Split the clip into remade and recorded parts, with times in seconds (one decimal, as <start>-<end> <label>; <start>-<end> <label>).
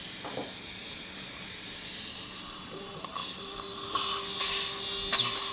0.0-5.5 recorded